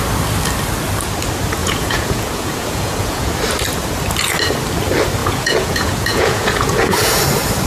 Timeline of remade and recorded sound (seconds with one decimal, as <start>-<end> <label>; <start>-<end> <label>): 0.0-1.6 recorded; 1.6-3.3 remade; 3.3-5.2 recorded; 5.2-7.2 remade; 7.2-7.7 recorded